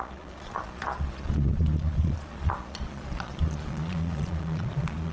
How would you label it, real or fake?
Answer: fake